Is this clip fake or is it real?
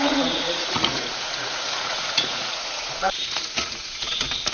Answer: fake